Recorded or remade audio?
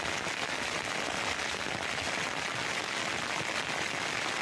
recorded